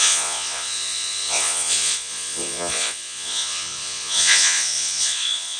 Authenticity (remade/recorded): remade